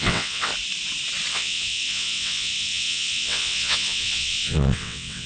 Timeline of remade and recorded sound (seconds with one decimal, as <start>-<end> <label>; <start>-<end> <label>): 0.0-0.5 remade; 0.5-1.3 recorded; 1.3-5.3 remade